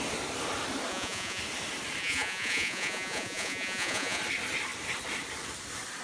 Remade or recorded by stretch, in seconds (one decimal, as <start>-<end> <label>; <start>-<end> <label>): 0.0-0.9 recorded; 0.9-1.4 remade; 1.4-2.0 recorded; 2.0-4.2 remade; 4.2-6.0 recorded